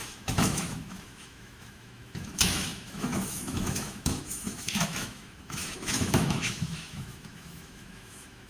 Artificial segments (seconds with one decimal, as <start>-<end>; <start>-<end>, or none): 0.0-8.5